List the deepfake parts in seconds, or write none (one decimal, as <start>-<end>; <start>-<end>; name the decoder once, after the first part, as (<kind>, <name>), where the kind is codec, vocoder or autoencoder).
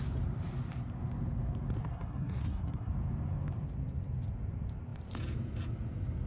1.8-2.9 (codec, SNAC)